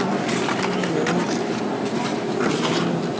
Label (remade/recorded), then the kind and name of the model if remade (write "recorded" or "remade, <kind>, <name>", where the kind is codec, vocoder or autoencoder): recorded